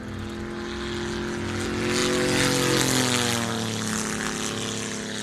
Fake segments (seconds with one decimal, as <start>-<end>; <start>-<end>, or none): none